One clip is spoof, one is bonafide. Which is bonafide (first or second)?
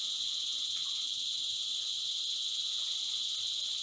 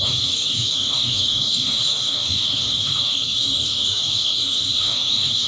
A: first